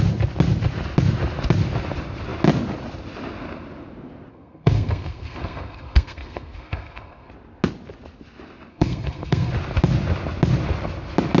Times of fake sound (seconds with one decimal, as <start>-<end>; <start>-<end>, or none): 4.3-7.3; 8.7-9.5

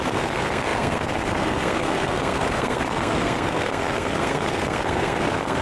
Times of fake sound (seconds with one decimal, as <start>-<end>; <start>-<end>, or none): 0.0-5.6

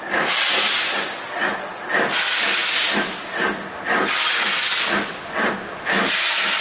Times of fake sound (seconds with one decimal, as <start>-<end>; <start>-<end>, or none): none

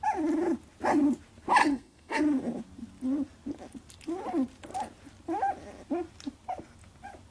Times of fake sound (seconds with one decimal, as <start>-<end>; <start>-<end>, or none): 1.6-2.2

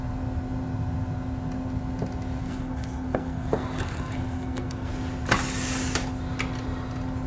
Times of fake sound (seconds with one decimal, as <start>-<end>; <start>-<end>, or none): 2.4-4.9

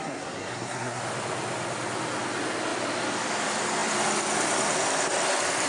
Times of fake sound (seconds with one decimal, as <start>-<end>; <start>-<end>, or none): 0.0-1.0